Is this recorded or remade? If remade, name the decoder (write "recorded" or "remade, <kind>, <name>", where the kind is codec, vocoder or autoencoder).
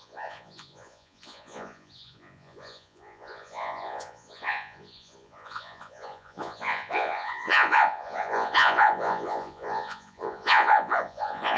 remade, vocoder, Vocos